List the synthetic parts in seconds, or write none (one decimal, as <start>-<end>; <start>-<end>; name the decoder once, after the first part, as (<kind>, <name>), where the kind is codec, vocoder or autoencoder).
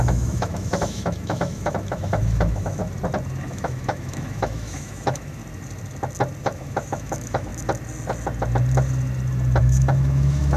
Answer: 0.0-2.8 (autoencoder, DAC-VAE); 3.4-5.4; 6.4-7.5; 9.6-10.6